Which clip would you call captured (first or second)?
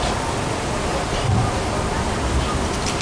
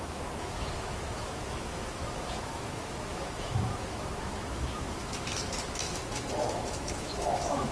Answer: first